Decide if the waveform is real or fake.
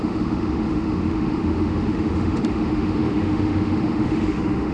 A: fake